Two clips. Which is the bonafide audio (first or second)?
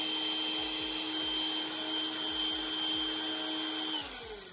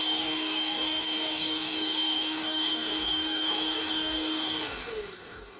first